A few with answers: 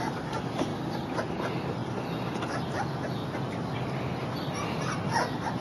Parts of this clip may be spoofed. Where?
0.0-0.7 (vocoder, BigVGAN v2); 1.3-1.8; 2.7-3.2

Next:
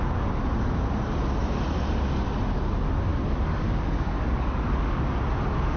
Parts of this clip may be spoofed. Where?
3.1-5.2 (codec, DAC)

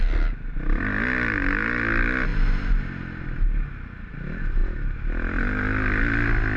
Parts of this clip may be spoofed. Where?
none

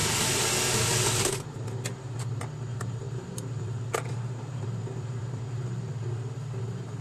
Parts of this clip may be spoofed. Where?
2.7-5.9 (vocoder, BigVGAN v2)

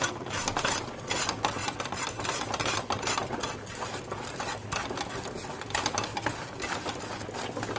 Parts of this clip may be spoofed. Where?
none

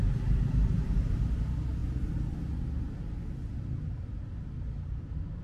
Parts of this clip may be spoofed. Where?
0.0-1.2 (vocoder, BigVGAN v2)

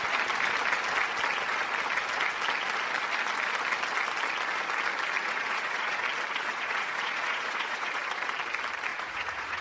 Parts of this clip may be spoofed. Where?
5.2-6.0 (vocoder, Vocos); 6.5-8.0; 8.9-9.6